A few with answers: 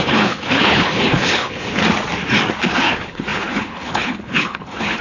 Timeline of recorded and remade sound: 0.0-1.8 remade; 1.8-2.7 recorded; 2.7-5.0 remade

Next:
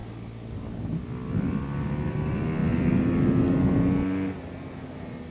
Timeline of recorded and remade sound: 0.0-5.3 recorded

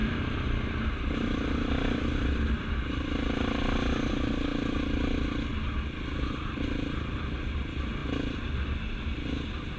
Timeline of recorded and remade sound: 0.0-2.6 recorded; 2.6-4.5 remade; 4.5-7.3 recorded; 7.3-8.0 remade; 8.0-8.9 recorded; 8.9-9.8 remade

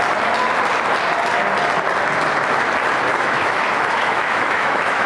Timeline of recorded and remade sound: 0.0-3.1 recorded; 3.1-5.1 remade

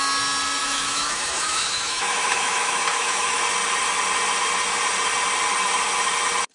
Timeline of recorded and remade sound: 0.0-0.6 recorded; 0.6-3.4 remade; 3.4-6.5 recorded

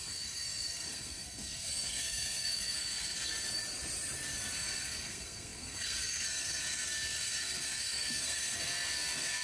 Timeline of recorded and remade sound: 0.0-3.6 remade; 3.6-4.3 recorded; 4.3-9.4 remade

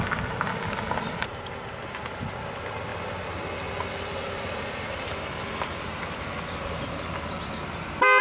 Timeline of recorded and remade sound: 0.0-8.2 recorded